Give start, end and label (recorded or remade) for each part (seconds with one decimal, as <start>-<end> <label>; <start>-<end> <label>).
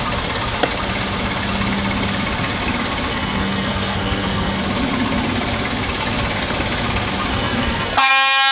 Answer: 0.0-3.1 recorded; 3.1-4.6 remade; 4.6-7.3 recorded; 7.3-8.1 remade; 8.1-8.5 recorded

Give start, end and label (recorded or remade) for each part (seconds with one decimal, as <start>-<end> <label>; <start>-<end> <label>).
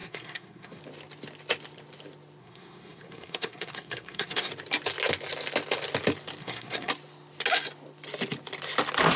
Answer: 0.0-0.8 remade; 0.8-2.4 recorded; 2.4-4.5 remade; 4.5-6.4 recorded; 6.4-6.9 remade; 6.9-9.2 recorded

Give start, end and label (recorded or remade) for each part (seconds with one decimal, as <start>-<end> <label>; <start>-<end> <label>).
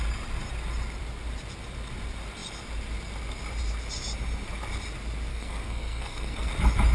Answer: 0.0-5.3 recorded; 5.3-6.5 remade; 6.5-6.9 recorded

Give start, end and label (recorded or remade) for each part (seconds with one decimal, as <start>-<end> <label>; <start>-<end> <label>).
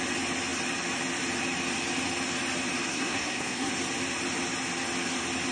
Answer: 0.0-2.9 recorded; 2.9-3.7 remade; 3.7-5.5 recorded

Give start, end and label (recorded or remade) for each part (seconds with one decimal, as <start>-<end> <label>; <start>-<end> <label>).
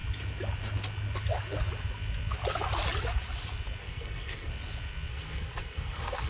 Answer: 0.0-3.8 recorded; 3.8-4.5 remade; 4.5-5.1 recorded; 5.1-6.3 remade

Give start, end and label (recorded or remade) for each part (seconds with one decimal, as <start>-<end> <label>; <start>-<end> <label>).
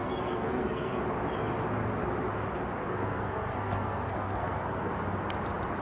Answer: 0.0-1.0 remade; 1.0-2.8 recorded; 2.8-4.9 remade; 4.9-5.8 recorded